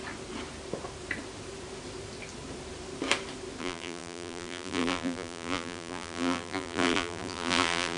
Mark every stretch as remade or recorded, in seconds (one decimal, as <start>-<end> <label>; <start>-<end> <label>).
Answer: 0.0-3.6 recorded; 3.6-8.0 remade